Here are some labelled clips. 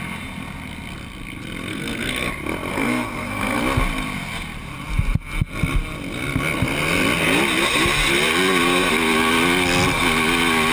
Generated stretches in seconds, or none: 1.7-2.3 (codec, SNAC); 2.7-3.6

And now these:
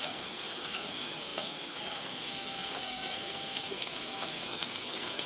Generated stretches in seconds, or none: 0.0-5.3 (codec, SNAC)

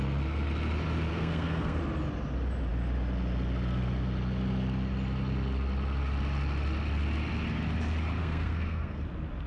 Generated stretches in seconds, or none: 1.1-1.8 (codec, SNAC); 8.2-9.0

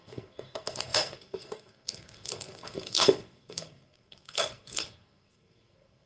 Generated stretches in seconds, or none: 0.0-6.1 (codec, SNAC)

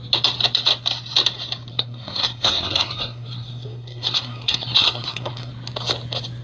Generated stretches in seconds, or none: 1.7-5.5 (codec, SNAC)

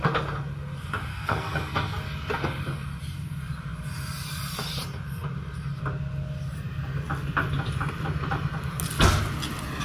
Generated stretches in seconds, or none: 1.1-1.9 (codec, SNAC)

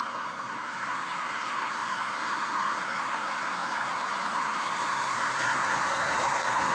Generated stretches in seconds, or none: 0.0-6.7 (codec, SNAC)

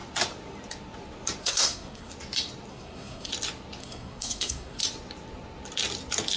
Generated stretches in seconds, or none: 1.4-2.1 (codec, SNAC); 2.7-3.3; 3.8-4.8